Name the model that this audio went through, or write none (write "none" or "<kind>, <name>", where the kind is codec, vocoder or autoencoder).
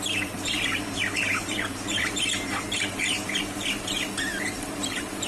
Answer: vocoder, BigVGAN v2